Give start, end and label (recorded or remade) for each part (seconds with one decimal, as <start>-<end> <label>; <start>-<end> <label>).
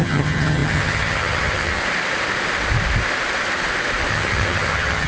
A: 0.0-1.8 remade; 1.8-4.1 recorded; 4.1-5.1 remade